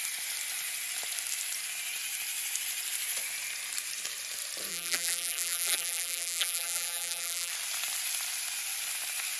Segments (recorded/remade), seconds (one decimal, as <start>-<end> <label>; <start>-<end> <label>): 0.0-4.7 recorded; 4.7-7.5 remade; 7.5-9.4 recorded